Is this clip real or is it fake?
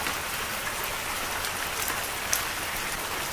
real